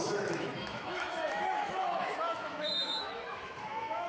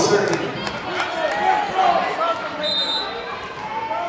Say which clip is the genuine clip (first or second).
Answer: second